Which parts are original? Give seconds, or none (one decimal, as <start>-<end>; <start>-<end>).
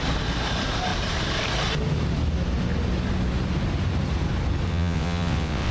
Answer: 0.0-4.7